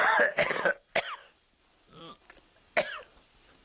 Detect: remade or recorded recorded